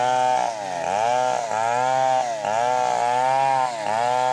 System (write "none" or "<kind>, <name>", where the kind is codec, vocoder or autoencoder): none